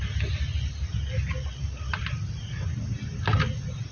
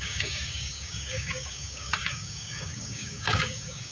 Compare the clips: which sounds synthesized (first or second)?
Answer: second